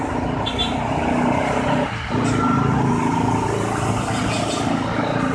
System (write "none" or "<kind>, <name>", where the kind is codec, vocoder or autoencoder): none